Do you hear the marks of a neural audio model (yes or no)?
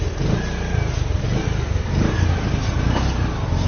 no